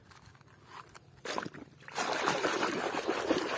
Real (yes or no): yes